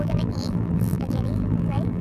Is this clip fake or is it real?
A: fake